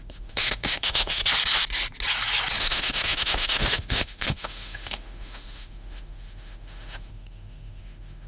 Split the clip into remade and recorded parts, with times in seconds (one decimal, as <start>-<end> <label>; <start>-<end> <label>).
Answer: 0.0-1.2 remade; 1.2-2.6 recorded; 2.6-8.3 remade